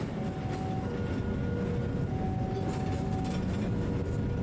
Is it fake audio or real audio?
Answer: real